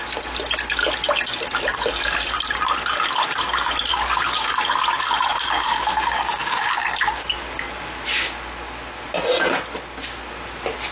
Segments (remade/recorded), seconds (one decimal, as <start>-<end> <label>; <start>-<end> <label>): 0.0-3.9 recorded; 3.9-4.6 remade; 4.6-5.3 recorded; 5.3-7.3 remade; 7.3-10.9 recorded